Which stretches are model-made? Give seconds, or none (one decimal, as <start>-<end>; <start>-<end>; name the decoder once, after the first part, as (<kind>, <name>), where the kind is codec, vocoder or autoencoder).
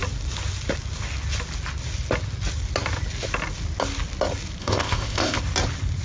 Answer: 4.6-5.4 (codec, ZipCodec)